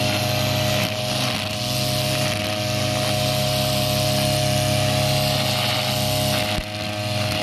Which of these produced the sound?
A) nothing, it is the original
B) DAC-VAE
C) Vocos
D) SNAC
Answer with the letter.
A